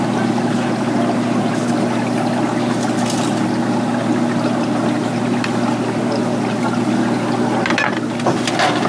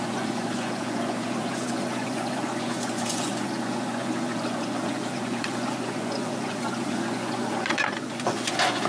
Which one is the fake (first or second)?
second